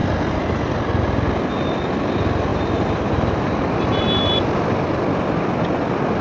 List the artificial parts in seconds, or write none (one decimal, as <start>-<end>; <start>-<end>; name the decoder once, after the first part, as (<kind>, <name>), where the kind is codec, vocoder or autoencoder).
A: 2.5-3.7 (vocoder, BigVGAN v2)